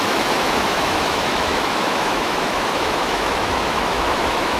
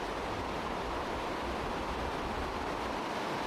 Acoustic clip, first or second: second